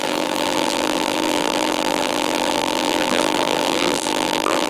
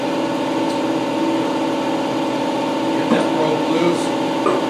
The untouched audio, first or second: second